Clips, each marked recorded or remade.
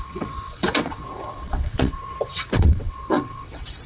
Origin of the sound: remade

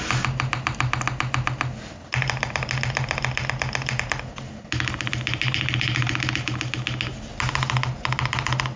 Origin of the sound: recorded